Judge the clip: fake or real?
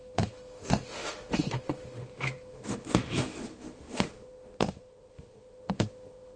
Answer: fake